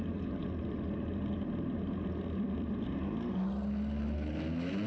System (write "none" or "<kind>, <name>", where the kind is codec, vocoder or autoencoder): none